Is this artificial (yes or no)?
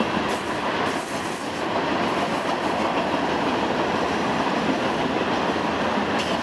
no